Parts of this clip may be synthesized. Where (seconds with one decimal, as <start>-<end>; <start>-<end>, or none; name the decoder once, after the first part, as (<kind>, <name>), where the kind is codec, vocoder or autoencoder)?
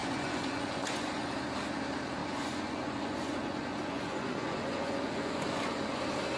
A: 0.0-1.3 (vocoder, Vocos); 2.2-6.0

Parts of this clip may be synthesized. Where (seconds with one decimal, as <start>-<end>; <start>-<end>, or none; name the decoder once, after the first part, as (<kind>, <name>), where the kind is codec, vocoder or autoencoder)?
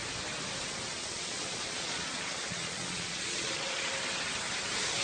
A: 0.9-3.9 (vocoder, Vocos)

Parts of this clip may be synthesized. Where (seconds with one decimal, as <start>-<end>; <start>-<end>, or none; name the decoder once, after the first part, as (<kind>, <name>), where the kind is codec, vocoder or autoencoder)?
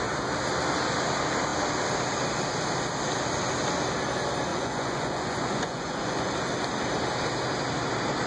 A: 4.5-6.3 (vocoder, Vocos)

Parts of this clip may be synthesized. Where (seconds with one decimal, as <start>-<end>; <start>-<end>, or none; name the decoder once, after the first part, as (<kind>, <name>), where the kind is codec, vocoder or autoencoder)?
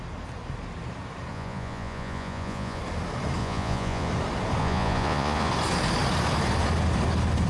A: 1.3-2.8 (vocoder, Vocos); 3.4-4.1; 4.6-5.5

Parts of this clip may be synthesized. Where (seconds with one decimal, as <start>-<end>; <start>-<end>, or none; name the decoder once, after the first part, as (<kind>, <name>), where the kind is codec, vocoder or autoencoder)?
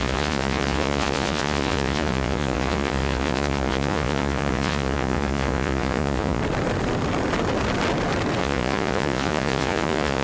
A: 0.0-6.4 (vocoder, Vocos); 8.4-10.2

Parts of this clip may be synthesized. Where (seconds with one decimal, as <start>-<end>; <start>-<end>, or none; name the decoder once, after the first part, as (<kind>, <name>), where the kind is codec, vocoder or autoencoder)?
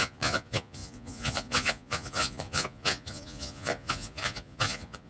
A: 0.0-5.1 (vocoder, Vocos)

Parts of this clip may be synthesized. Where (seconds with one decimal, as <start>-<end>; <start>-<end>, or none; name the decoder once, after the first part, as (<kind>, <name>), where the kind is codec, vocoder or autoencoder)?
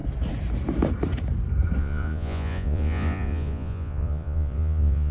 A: 1.8-5.1 (vocoder, Vocos)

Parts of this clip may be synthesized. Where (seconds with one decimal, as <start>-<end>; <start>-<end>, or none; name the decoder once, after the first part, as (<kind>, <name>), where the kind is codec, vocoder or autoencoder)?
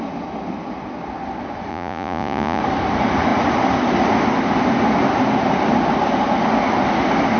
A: 1.7-2.6 (vocoder, Vocos)